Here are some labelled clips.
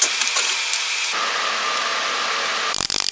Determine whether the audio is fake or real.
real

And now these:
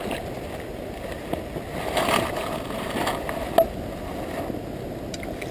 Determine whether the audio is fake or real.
real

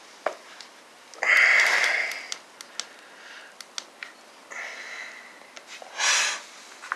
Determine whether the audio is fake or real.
real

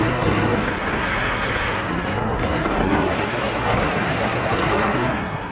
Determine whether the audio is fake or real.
fake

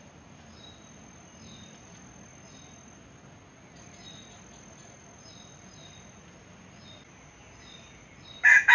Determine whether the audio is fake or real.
real